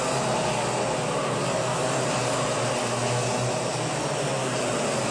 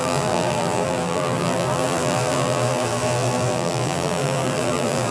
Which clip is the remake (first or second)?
second